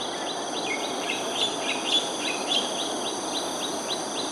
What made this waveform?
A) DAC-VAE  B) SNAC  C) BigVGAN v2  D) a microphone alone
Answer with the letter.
D